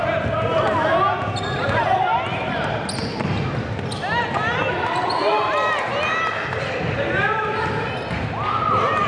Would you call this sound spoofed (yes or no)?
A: no